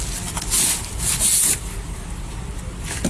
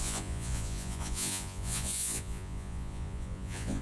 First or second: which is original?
first